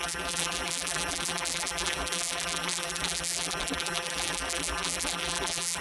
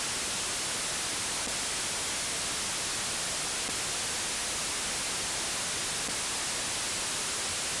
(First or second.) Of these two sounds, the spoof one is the first